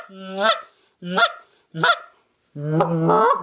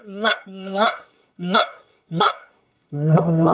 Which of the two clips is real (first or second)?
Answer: first